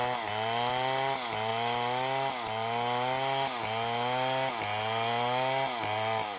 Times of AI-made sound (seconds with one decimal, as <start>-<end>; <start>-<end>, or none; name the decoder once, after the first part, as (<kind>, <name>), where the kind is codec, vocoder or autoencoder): none